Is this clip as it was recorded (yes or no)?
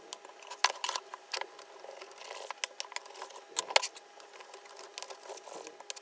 yes